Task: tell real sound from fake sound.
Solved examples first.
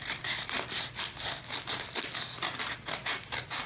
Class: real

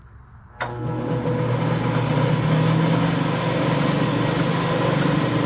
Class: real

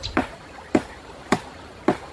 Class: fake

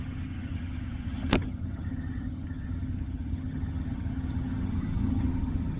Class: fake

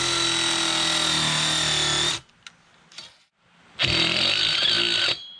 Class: real